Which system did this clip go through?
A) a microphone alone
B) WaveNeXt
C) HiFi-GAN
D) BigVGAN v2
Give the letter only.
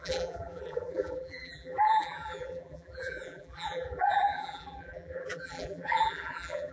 D